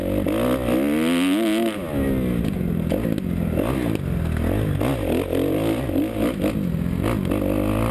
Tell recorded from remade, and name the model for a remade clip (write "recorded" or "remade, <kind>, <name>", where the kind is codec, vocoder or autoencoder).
recorded